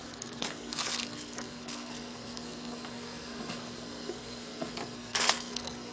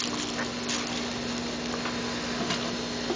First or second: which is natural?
second